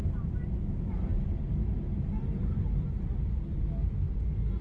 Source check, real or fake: real